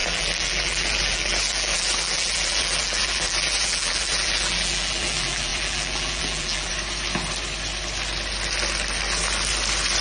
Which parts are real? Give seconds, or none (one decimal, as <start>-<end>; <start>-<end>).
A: 6.7-10.0